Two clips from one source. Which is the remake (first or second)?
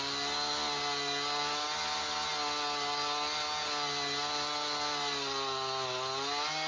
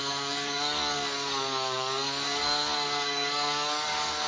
second